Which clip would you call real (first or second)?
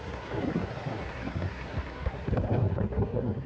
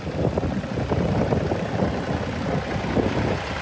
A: second